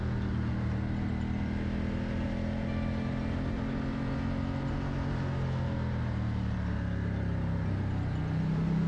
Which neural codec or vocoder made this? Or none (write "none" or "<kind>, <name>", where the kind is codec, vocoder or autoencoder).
none